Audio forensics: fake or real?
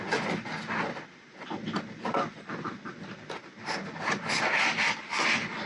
real